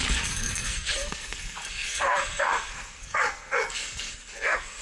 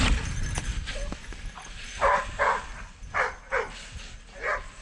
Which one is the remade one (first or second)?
first